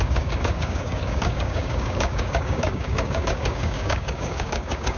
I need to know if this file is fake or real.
fake